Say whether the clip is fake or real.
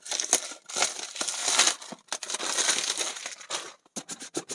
real